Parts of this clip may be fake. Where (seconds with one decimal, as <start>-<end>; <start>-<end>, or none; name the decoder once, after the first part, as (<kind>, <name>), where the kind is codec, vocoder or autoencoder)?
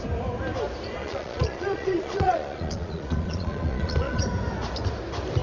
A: 1.0-4.2 (vocoder, Vocos)